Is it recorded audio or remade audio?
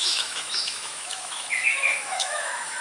remade